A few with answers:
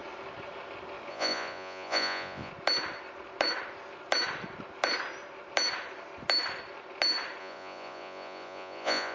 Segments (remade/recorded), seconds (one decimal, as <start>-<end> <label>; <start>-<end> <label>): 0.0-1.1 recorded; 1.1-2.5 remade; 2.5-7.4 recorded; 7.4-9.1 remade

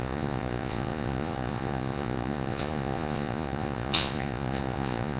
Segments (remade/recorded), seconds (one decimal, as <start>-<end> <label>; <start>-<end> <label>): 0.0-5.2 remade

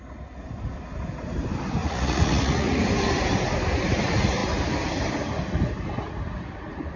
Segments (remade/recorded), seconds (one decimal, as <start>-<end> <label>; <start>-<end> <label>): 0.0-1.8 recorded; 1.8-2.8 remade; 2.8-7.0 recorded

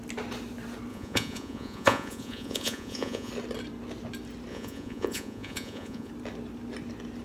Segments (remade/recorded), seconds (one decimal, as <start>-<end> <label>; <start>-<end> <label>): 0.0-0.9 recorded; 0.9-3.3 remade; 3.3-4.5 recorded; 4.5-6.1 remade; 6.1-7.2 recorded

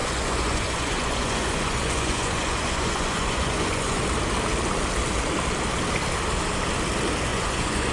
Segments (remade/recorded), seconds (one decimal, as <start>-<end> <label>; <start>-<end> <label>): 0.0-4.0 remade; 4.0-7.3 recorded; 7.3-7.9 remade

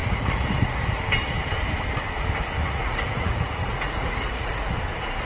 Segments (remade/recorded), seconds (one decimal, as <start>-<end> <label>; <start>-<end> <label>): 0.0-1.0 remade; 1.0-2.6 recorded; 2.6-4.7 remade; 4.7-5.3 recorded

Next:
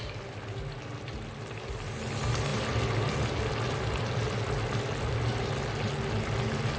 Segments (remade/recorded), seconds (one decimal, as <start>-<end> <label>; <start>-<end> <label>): 0.0-6.8 recorded